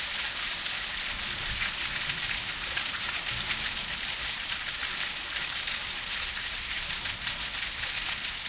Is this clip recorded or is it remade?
remade